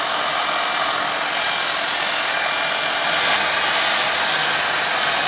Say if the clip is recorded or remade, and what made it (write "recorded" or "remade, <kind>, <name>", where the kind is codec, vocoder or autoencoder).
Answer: recorded